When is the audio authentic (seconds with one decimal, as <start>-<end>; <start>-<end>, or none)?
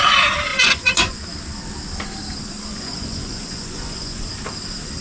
0.0-0.5; 1.2-2.7; 4.2-5.0